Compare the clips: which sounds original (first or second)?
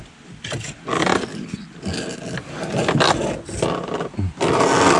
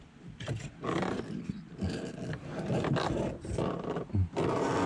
first